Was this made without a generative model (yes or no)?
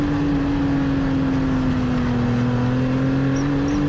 yes